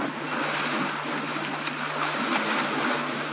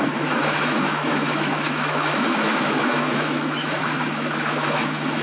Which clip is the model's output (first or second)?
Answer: second